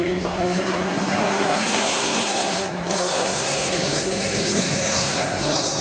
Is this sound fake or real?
fake